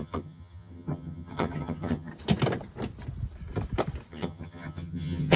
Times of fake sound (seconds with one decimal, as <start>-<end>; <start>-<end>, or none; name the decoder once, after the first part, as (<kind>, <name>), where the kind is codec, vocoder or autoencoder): 0.0-2.1 (vocoder, HiFi-GAN); 4.1-5.4